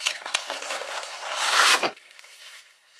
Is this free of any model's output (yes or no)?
no